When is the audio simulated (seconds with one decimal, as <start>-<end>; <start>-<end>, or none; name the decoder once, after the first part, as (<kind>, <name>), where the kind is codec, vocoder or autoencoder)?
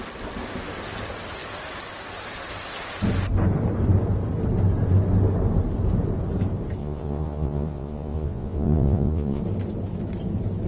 6.8-9.4 (vocoder, Vocos)